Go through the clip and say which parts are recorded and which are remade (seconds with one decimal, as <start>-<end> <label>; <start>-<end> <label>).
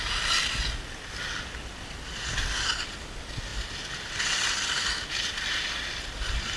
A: 0.0-6.6 recorded